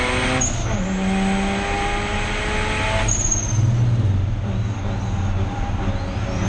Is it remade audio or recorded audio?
recorded